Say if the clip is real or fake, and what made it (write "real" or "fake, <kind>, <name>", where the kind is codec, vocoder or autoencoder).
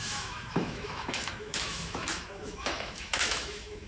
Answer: fake, autoencoder, DAC-VAE